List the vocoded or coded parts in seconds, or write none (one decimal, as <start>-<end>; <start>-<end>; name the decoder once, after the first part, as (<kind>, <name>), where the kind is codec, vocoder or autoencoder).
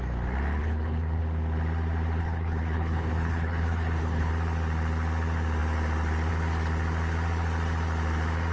0.6-1.2 (codec, HILCodec); 2.2-4.3